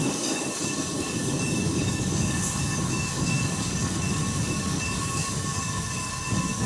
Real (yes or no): no